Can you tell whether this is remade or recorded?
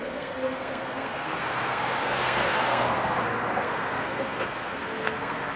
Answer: remade